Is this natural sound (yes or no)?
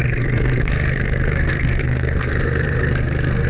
no